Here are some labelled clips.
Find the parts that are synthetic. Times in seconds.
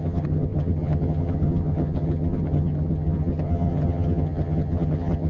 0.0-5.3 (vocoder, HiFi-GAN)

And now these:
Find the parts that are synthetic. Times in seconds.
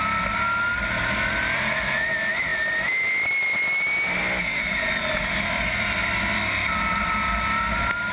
none